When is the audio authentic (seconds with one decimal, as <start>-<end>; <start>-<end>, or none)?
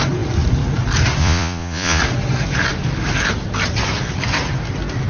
0.0-1.2; 2.0-5.1